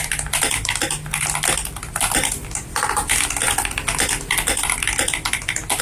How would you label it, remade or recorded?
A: recorded